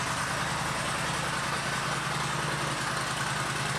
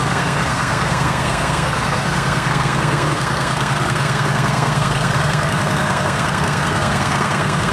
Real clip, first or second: first